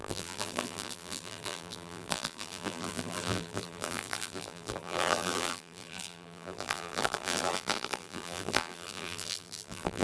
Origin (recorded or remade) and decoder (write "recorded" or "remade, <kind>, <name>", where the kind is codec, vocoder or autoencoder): remade, vocoder, BigVGAN v2